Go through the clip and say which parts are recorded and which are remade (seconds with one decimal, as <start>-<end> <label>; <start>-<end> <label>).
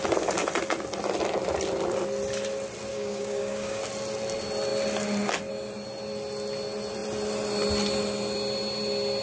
0.0-2.9 recorded; 2.9-3.8 remade; 3.8-9.2 recorded